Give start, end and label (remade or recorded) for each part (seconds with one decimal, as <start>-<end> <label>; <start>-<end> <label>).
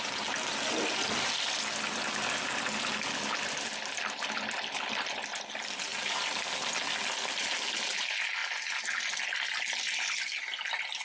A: 0.0-11.0 recorded